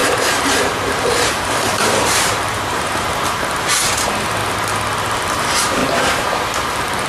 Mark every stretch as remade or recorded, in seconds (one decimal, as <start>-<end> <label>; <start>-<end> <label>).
0.0-4.4 remade; 4.4-5.0 recorded; 5.0-5.8 remade; 5.8-7.1 recorded